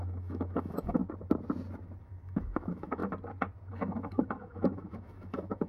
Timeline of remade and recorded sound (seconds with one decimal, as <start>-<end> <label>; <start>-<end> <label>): 0.0-1.0 remade; 1.0-2.0 recorded; 2.0-3.0 remade; 3.0-3.7 recorded; 3.7-5.7 remade